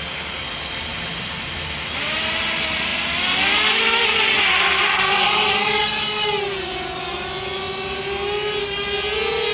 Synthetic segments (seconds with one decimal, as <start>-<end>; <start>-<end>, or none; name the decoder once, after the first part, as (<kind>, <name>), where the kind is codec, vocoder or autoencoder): none